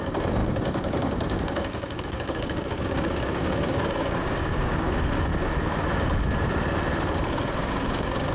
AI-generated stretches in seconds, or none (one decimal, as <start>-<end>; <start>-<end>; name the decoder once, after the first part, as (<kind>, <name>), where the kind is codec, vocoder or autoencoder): 0.0-5.3 (codec, DAC); 7.3-8.3